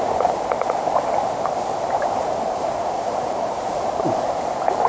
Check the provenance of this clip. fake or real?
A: fake